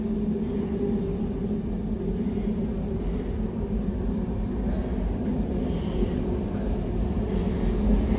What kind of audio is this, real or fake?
real